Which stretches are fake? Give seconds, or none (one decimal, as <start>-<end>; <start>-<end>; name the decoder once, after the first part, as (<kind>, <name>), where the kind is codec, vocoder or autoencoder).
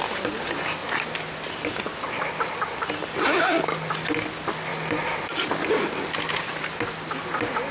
none